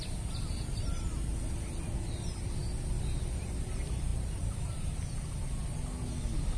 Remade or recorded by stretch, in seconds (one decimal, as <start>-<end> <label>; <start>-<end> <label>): 0.0-4.1 recorded; 4.1-4.7 remade; 4.7-6.6 recorded